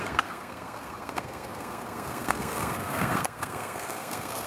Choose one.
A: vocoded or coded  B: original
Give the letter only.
A